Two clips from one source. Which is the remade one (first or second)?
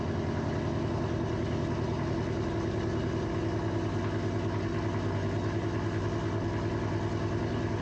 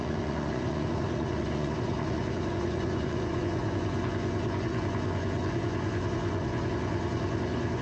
second